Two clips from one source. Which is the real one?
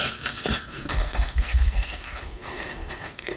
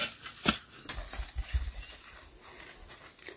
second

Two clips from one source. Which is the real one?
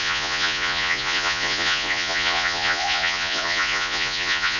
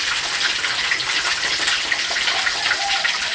second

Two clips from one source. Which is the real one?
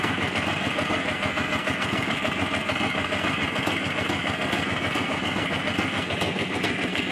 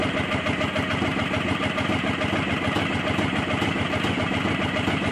second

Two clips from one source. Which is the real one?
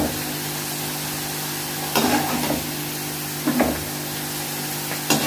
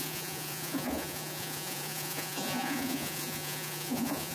first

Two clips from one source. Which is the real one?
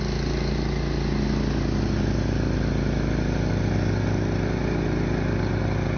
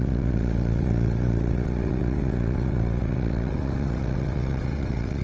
first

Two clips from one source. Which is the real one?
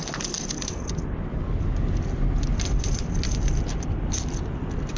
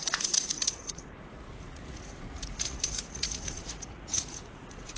first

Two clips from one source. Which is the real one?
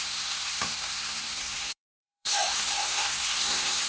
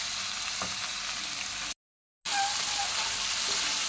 second